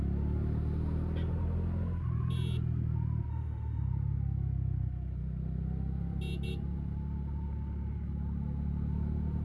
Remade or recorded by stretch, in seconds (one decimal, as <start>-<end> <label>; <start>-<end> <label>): 0.0-3.3 recorded; 3.3-3.9 remade; 3.9-9.4 recorded